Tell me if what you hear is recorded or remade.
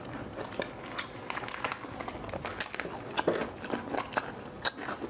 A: recorded